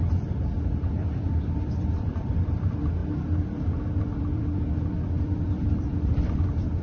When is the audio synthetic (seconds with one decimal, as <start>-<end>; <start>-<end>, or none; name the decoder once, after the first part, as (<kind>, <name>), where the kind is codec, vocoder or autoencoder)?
0.0-6.8 (vocoder, BigVGAN v2)